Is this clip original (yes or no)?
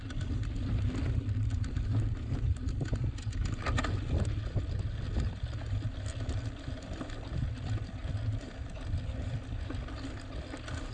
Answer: yes